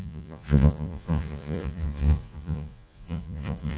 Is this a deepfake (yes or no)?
yes